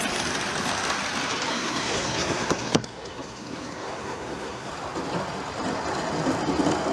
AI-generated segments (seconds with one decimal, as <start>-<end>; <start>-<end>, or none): 1.5-4.7